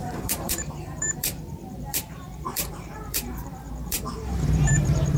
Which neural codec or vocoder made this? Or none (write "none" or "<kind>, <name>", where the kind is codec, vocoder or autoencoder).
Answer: vocoder, BigVGAN v2